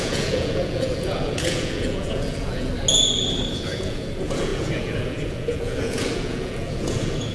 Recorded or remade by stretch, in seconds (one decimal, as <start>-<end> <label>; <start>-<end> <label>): 0.0-2.7 remade; 2.7-3.5 recorded; 3.5-7.3 remade